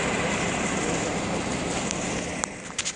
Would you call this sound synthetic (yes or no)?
no